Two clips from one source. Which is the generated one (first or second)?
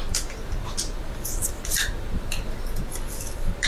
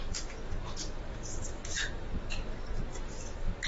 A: first